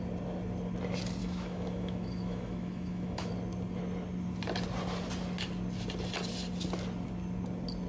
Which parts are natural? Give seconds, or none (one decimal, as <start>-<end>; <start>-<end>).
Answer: 0.0-1.2; 3.3-7.9